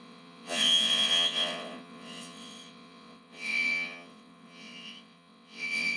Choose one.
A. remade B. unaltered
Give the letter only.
A